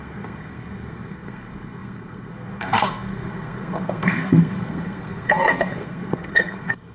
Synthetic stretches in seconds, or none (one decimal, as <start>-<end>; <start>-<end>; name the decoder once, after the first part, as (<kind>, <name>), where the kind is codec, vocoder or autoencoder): 0.0-6.9 (codec, SNAC)